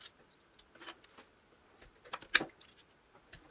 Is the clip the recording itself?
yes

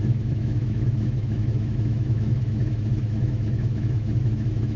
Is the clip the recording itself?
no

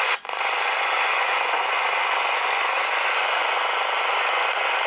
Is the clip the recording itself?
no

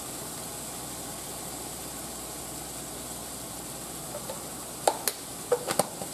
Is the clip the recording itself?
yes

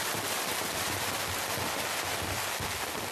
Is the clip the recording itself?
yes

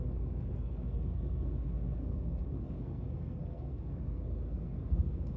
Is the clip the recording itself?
no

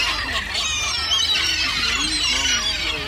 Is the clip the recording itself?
yes